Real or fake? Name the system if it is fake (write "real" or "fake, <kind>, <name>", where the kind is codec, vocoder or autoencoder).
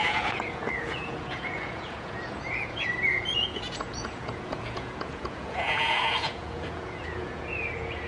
fake, vocoder, Vocos